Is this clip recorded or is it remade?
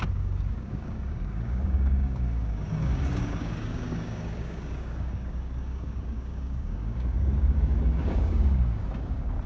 remade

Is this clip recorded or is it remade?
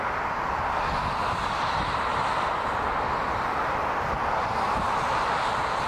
recorded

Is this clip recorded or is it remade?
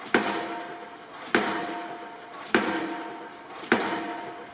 recorded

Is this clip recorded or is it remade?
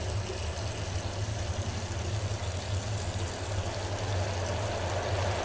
recorded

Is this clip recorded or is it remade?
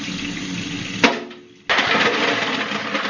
recorded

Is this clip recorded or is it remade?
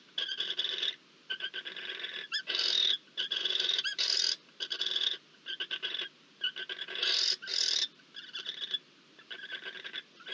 recorded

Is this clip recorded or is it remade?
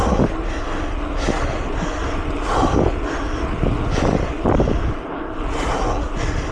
recorded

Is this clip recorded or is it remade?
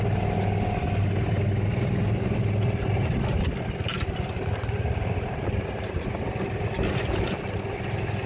recorded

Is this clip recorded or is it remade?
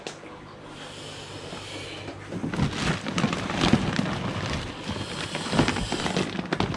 recorded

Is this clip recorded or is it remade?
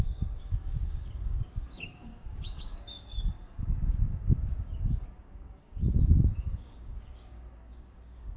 remade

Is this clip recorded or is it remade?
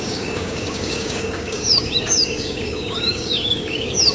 remade